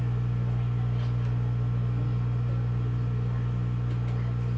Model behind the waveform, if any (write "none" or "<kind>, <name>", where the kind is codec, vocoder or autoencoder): none